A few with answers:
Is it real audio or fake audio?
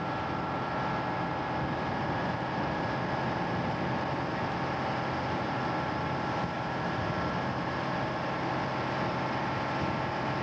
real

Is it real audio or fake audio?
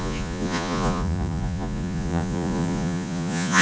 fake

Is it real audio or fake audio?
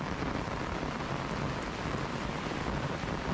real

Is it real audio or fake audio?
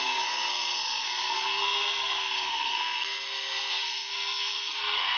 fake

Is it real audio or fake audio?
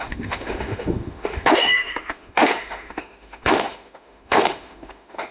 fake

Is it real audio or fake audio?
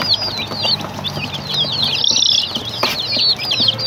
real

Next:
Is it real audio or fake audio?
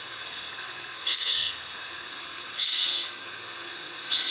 fake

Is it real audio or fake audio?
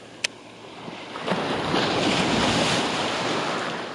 real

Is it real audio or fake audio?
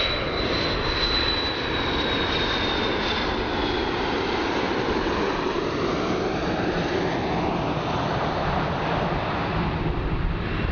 real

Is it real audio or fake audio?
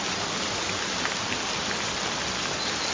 real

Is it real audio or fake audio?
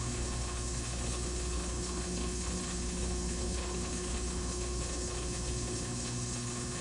fake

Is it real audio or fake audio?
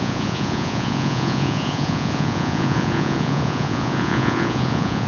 fake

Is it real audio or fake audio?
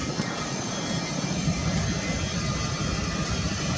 real